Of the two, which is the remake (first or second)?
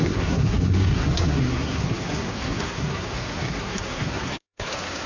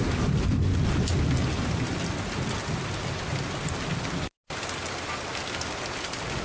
first